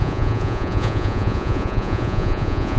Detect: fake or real fake